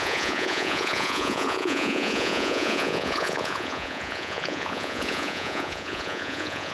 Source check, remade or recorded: remade